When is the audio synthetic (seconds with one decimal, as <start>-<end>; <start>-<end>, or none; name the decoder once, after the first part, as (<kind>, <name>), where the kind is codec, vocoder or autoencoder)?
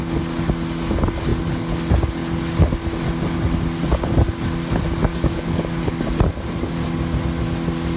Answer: 5.1-6.1 (codec, DAC)